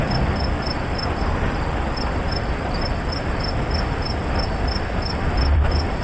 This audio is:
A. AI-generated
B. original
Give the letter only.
A